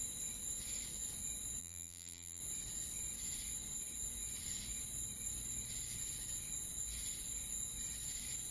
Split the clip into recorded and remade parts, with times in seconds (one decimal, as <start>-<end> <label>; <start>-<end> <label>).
0.0-1.6 recorded; 1.6-2.4 remade; 2.4-8.5 recorded